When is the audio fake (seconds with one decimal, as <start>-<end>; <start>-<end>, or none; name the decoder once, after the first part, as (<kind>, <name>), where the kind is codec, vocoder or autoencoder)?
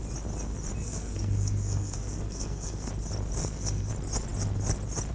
0.8-2.9 (codec, SNAC); 3.4-3.9